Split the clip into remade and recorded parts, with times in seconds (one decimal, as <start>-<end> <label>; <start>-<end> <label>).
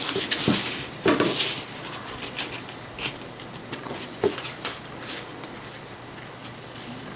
0.0-3.6 recorded; 3.6-4.5 remade; 4.5-7.2 recorded